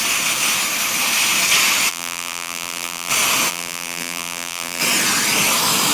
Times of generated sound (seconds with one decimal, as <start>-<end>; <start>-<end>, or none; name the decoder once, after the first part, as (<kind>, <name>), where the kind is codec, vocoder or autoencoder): 1.9-3.1 (vocoder, BigVGAN v2); 3.5-4.8